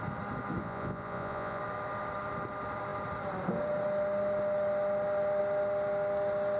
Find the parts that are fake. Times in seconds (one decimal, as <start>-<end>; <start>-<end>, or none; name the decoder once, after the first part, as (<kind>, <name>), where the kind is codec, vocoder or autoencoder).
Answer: 0.6-1.6 (vocoder, Vocos)